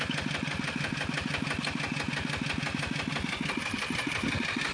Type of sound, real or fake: real